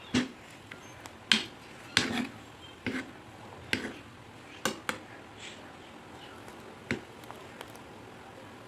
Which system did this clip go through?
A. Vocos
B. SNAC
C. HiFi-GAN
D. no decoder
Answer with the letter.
D